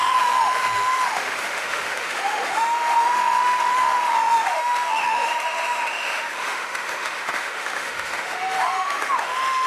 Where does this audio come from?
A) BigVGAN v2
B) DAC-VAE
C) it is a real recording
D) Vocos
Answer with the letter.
B